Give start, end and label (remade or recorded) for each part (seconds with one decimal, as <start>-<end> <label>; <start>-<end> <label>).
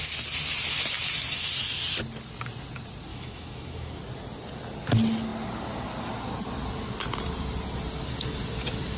0.0-3.1 recorded; 3.1-4.0 remade; 4.0-9.0 recorded